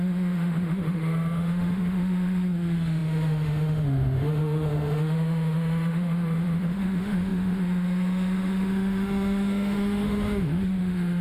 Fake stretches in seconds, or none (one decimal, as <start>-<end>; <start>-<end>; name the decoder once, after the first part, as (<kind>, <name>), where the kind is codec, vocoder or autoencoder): 0.0-11.2 (autoencoder, DAC-VAE)